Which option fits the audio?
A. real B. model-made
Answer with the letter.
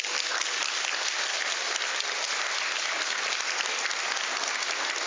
A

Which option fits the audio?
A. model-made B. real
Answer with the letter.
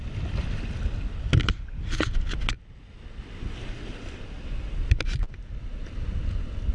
B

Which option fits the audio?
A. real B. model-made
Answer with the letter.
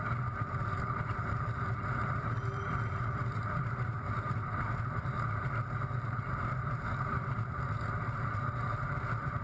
B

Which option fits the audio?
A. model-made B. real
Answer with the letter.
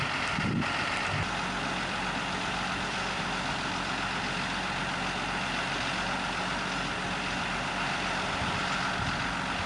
B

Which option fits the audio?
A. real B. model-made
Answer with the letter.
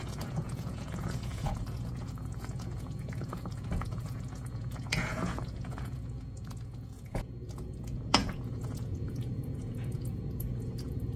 B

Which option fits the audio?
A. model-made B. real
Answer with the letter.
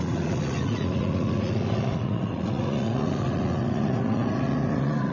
A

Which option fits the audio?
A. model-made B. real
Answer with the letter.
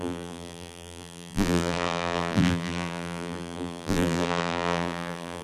A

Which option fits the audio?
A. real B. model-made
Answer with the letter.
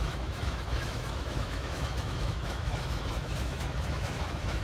B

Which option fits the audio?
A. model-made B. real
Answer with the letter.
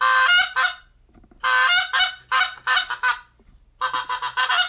B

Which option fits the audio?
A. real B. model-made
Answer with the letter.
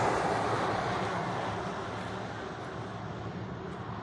A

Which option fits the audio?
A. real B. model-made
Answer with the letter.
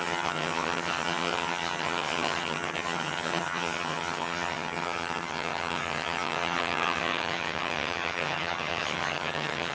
B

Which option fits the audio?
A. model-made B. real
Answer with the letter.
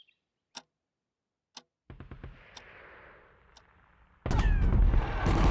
B